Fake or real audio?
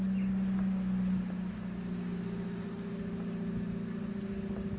real